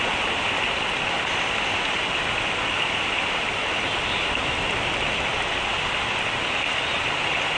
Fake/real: real